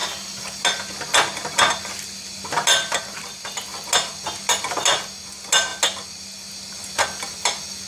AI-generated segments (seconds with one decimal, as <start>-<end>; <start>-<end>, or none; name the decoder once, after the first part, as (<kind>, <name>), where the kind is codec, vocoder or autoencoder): none